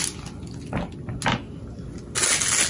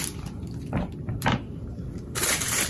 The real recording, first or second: first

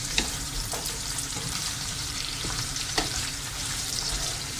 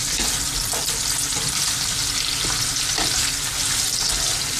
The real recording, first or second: second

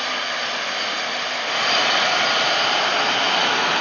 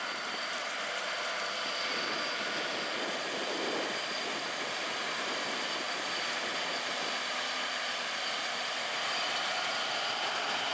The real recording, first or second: first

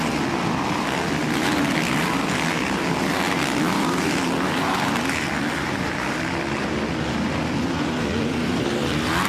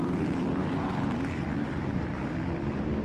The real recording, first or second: first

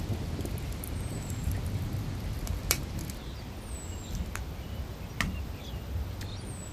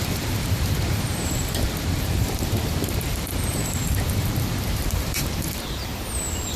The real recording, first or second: first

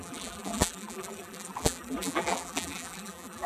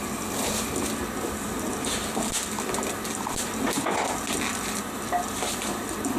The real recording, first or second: second